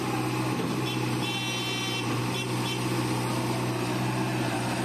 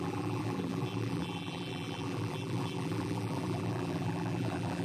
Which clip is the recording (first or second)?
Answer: first